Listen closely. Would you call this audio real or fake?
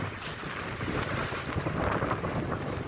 real